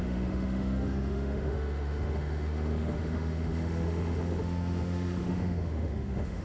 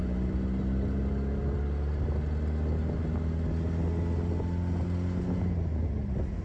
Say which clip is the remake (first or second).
first